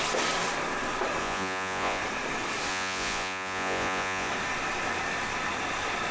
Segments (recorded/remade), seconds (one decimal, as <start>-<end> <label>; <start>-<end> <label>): 0.0-1.2 recorded; 1.2-2.0 remade; 2.0-2.7 recorded; 2.7-4.3 remade; 4.3-6.1 recorded